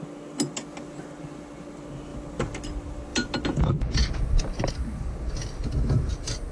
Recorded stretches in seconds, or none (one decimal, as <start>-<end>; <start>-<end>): 0.0-3.1; 4.4-6.5